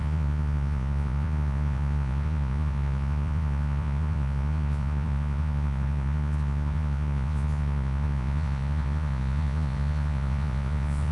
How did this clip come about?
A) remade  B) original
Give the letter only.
A